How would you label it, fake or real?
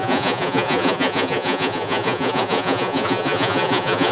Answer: fake